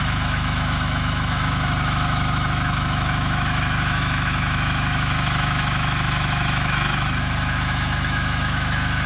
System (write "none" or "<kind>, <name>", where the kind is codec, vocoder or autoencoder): autoencoder, DAC-VAE